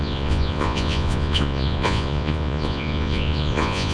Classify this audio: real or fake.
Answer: fake